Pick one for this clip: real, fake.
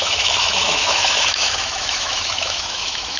fake